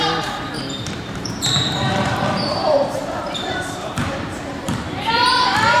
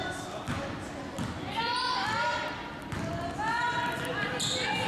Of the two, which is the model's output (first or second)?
first